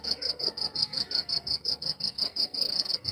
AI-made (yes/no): yes